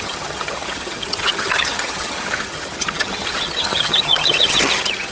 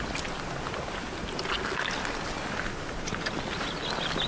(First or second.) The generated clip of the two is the first